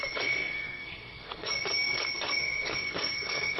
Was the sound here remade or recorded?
remade